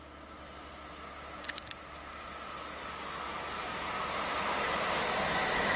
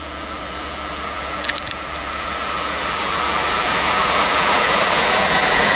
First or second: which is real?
first